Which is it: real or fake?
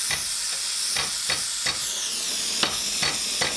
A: real